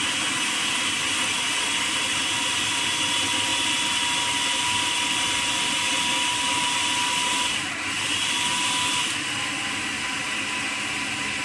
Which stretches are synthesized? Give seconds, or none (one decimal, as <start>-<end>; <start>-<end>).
none

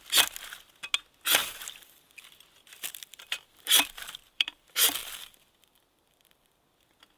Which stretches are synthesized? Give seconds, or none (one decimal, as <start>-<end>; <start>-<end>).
1.4-1.9; 3.1-6.2

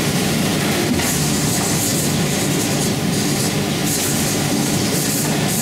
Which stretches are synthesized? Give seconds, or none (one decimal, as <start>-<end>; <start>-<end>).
0.0-0.5; 1.1-1.9; 2.6-3.8; 4.7-5.6

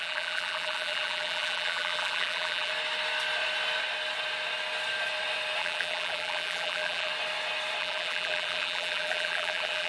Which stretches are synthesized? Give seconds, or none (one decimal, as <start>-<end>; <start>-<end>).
0.0-2.7; 5.6-7.1; 7.8-9.9

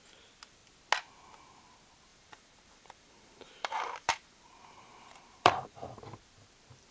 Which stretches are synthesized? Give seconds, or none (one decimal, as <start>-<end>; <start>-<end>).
2.1-5.9

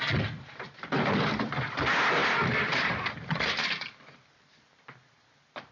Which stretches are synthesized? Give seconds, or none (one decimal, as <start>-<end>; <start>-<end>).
0.0-5.7